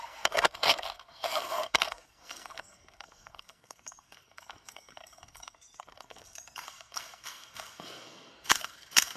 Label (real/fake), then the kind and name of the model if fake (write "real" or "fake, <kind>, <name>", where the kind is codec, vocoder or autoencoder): fake, codec, SNAC